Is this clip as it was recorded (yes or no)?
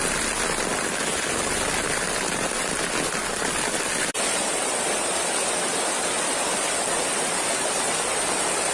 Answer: no